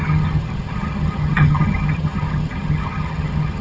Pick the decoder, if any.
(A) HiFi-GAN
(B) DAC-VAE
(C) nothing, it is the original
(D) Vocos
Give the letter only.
A